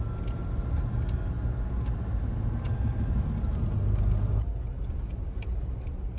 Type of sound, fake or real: real